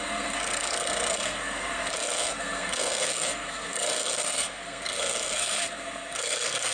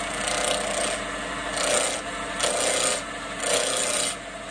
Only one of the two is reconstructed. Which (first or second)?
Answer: first